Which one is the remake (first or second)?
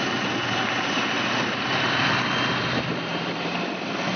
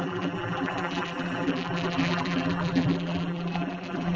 second